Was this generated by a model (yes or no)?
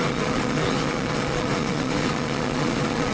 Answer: yes